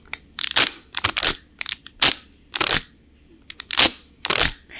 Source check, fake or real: real